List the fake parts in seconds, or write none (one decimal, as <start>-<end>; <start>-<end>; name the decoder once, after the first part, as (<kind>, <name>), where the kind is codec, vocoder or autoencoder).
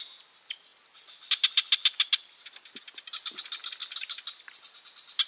none